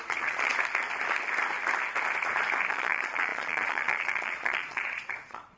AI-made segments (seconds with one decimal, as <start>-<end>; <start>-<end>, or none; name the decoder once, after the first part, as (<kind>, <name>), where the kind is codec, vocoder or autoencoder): 0.0-0.5 (vocoder, Vocos); 2.7-5.6